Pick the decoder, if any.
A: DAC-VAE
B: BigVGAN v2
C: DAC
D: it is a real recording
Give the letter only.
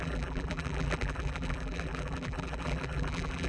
B